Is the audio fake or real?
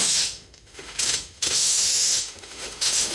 fake